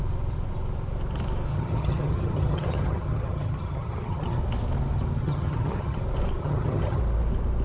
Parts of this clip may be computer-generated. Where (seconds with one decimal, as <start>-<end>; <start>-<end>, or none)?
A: 1.5-4.4; 5.2-6.0; 6.4-7.0